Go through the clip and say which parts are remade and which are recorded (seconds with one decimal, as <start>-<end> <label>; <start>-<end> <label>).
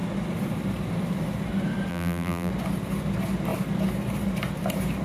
0.0-1.9 recorded; 1.9-2.5 remade; 2.5-5.0 recorded